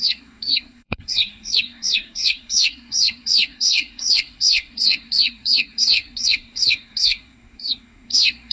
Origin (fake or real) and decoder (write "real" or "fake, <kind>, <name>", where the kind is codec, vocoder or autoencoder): fake, codec, SNAC